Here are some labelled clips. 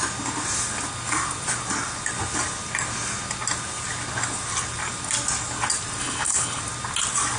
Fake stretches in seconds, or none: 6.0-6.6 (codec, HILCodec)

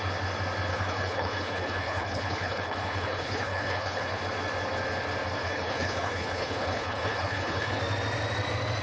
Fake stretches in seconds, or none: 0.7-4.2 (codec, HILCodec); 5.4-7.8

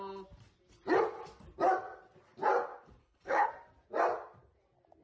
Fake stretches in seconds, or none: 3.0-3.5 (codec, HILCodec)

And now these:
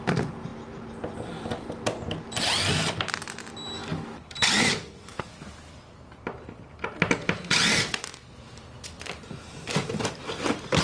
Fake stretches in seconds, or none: none

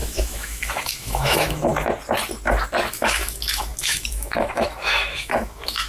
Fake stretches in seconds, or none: 0.0-1.7 (autoencoder, DAC-VAE); 2.9-5.9

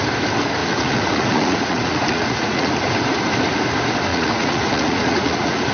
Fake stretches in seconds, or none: 0.6-2.7 (vocoder, Vocos); 4.1-5.7